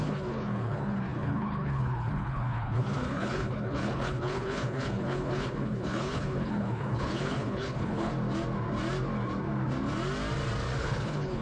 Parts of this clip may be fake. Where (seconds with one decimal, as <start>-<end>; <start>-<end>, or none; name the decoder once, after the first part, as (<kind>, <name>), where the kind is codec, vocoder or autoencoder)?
0.0-8.1 (codec, HILCodec); 10.8-11.4